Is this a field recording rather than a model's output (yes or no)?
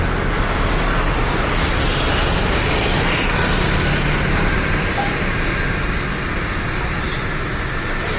yes